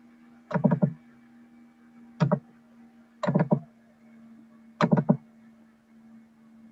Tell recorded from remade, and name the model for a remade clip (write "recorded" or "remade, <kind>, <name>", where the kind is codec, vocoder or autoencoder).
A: recorded